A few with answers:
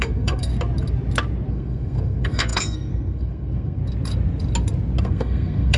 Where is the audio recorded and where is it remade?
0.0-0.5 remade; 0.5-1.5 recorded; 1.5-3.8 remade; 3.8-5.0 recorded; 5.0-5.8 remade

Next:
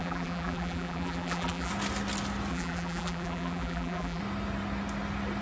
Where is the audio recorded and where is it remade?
0.0-1.7 remade; 1.7-2.5 recorded; 2.5-4.2 remade; 4.2-5.4 recorded

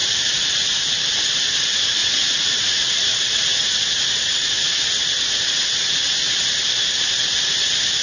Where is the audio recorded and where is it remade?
0.0-2.0 recorded; 2.0-5.9 remade; 5.9-8.0 recorded

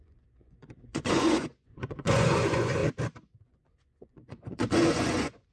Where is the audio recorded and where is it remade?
0.0-2.8 remade; 2.8-3.4 recorded; 3.4-5.5 remade

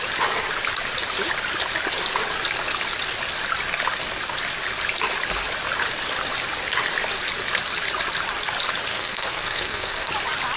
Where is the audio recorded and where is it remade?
0.0-8.9 recorded; 8.9-10.1 remade; 10.1-10.6 recorded